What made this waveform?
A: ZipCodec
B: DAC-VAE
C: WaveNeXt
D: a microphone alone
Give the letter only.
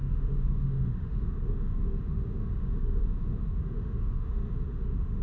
B